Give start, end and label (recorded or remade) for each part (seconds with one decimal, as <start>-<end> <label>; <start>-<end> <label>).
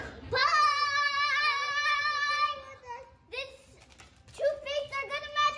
0.0-5.6 recorded